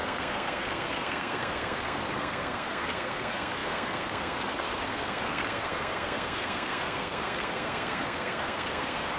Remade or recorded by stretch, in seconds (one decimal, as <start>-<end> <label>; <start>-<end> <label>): 0.0-9.2 remade